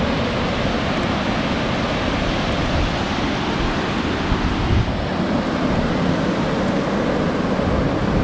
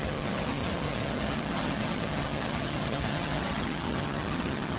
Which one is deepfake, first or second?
second